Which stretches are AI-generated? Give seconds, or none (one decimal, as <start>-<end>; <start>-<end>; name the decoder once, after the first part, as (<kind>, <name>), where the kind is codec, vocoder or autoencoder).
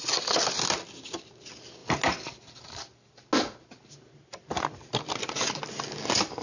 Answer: none